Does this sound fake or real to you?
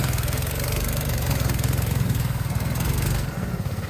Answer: fake